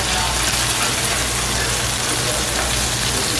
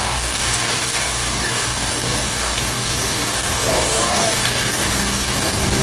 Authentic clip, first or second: first